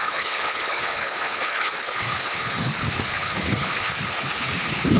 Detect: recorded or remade remade